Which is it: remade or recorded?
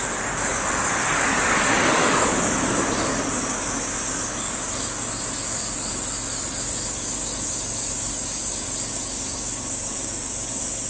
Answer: remade